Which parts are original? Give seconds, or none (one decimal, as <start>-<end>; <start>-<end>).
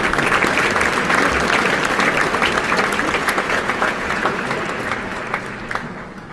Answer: 0.0-3.2; 4.4-6.3